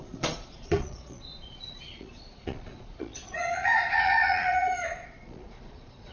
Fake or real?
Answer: fake